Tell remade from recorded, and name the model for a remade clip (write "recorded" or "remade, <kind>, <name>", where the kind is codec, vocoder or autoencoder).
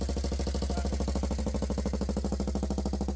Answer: recorded